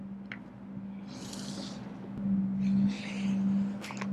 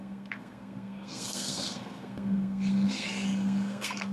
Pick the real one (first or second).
first